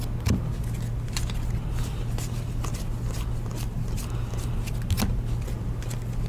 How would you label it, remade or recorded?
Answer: recorded